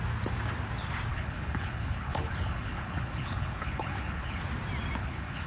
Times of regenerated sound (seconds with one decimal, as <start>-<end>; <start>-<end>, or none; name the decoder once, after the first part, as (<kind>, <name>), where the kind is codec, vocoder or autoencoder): 1.1-4.4 (codec, HILCodec); 5.0-5.5